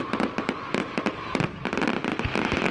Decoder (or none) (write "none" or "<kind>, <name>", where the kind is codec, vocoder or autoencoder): none